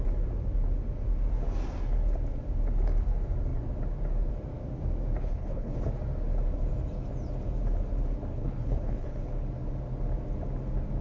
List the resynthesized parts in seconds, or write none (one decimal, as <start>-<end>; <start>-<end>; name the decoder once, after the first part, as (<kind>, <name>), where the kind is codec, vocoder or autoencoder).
5.2-5.9 (codec, HILCodec); 8.3-9.3

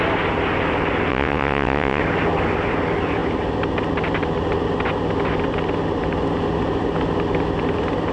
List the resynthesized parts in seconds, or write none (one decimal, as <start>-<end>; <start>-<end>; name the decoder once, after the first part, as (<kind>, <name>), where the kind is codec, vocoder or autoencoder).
1.1-2.0 (vocoder, WaveNeXt)

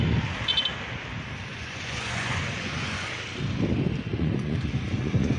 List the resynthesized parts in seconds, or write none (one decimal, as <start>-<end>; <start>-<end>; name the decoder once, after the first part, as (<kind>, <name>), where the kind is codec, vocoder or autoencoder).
1.5-3.1 (vocoder, Vocos); 4.1-5.4

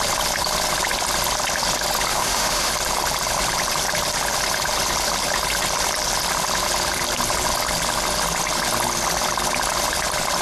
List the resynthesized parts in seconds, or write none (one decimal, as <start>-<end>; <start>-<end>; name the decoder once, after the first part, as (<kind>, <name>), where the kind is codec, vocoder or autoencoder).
2.1-2.7 (autoencoder, DAC-VAE)

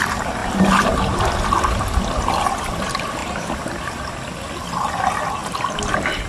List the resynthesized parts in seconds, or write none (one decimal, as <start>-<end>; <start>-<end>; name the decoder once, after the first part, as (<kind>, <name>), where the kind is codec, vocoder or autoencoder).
0.4-2.7 (vocoder, BigVGAN v2); 3.2-4.1; 5.4-6.3

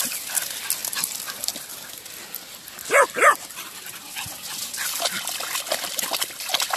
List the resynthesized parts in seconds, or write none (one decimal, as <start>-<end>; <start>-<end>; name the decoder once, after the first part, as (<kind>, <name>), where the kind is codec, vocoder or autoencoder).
none

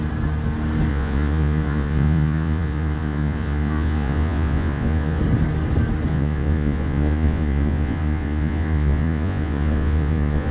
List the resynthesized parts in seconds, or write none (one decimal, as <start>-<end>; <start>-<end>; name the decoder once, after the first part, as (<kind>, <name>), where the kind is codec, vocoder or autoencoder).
0.9-5.2 (vocoder, Vocos); 6.1-10.5

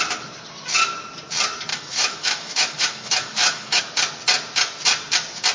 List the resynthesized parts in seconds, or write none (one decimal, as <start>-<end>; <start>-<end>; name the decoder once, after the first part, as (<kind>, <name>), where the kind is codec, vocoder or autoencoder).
1.7-3.8 (autoencoder, DAC-VAE)